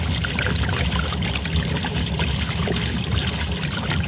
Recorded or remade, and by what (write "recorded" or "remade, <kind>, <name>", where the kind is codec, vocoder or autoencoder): recorded